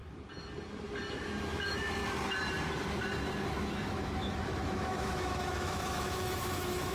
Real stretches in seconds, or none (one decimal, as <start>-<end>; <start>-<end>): 0.0-1.1; 2.0-3.6